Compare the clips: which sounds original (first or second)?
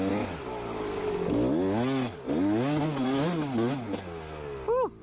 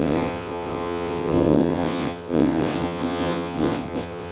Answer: first